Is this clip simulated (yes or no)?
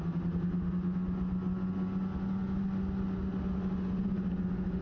no